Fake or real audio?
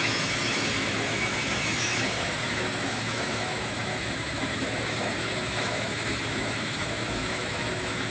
fake